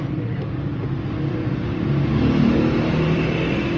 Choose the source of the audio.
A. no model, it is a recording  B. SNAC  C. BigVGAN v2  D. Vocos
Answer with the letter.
C